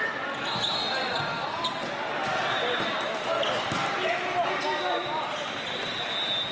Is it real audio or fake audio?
real